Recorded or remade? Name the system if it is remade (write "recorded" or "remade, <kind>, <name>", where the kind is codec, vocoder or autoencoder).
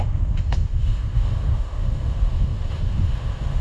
remade, autoencoder, DAC-VAE